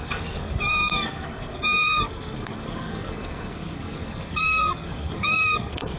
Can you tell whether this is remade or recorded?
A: remade